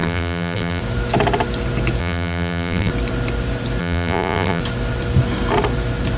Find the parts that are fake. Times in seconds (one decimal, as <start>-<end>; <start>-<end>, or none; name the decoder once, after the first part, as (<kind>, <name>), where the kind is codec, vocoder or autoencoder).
0.0-0.8 (vocoder, BigVGAN v2); 2.0-2.9; 3.8-4.6

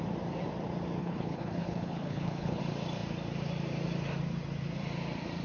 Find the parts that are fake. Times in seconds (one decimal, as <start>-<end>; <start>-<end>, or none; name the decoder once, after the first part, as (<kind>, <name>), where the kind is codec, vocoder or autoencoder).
1.0-2.6 (codec, HILCodec)

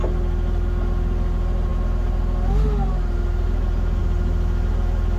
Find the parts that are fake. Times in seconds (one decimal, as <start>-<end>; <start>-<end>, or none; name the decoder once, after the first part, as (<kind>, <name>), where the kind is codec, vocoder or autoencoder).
none